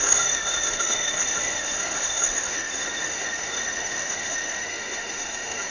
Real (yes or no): no